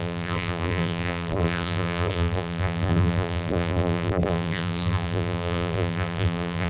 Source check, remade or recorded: remade